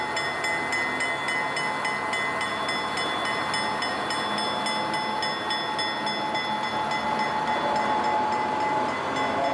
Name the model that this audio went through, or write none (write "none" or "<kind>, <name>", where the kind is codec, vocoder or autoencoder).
none